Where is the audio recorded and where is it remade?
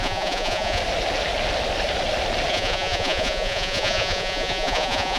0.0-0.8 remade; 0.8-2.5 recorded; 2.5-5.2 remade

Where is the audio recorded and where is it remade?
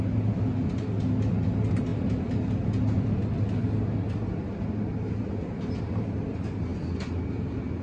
0.0-7.8 recorded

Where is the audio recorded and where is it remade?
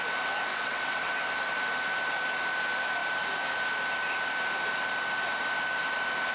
0.0-0.5 recorded; 0.5-1.1 remade; 1.1-6.3 recorded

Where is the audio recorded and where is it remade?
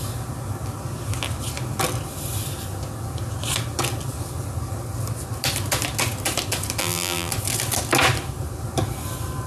0.0-6.8 recorded; 6.8-7.3 remade; 7.3-9.5 recorded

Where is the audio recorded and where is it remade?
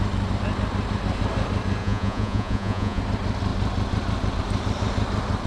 0.0-1.8 recorded; 1.8-3.0 remade; 3.0-5.5 recorded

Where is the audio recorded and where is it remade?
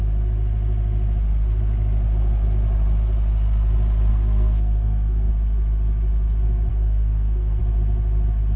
0.0-4.1 recorded; 4.1-5.3 remade; 5.3-6.7 recorded; 6.7-7.6 remade; 7.6-8.6 recorded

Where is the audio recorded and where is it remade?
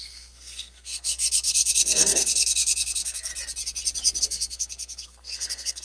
0.0-3.3 remade; 3.3-4.2 recorded; 4.2-5.8 remade